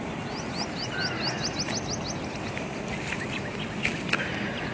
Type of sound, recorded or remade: recorded